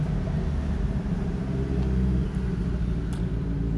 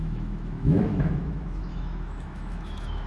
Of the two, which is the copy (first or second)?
second